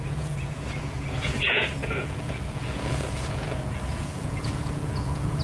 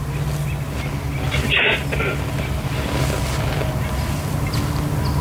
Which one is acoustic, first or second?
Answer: second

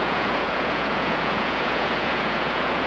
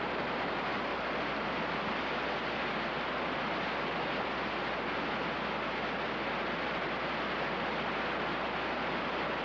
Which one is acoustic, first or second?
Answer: second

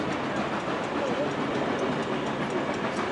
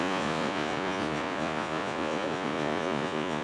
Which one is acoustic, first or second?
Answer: first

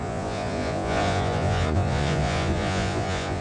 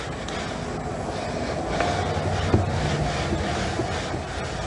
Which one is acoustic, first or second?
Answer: second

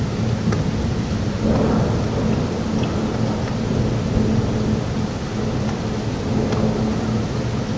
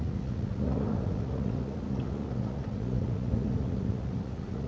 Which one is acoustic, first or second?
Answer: first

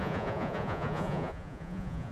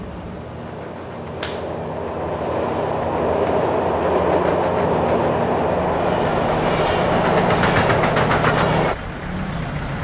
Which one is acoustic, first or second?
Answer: second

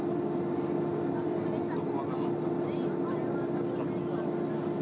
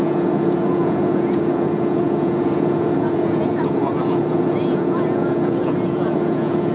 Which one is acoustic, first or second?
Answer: first